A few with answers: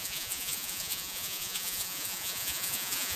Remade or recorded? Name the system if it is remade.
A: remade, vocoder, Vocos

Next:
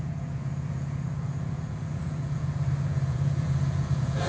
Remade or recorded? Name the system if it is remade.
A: remade, vocoder, Vocos